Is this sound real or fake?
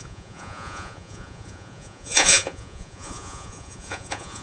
fake